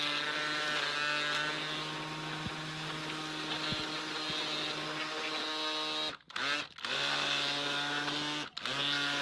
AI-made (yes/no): no